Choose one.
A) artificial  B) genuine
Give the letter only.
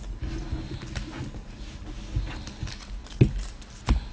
B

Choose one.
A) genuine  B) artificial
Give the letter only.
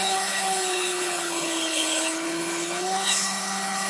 B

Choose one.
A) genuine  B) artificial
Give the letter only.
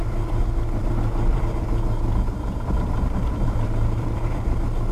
B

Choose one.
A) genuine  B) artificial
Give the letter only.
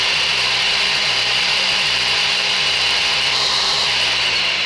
B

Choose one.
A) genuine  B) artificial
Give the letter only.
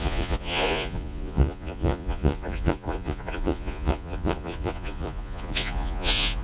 B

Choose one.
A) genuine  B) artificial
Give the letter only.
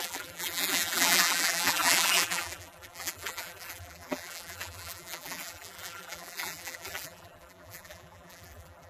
B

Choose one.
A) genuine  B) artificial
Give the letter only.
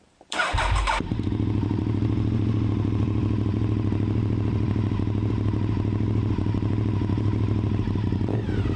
B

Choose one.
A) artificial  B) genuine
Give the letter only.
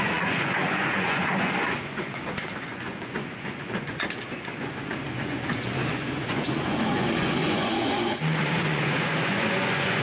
A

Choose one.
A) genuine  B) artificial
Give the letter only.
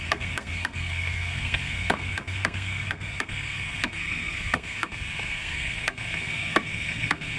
B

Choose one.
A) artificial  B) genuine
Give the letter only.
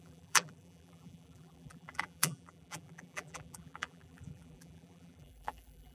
A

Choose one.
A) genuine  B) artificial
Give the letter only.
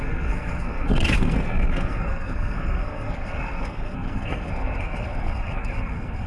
B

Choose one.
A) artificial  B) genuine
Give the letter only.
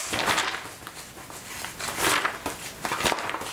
B